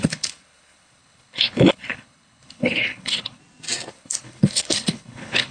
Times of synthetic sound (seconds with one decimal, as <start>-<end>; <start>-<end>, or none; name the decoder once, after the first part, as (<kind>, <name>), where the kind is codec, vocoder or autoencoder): 0.0-3.4 (codec, HILCodec); 3.9-5.5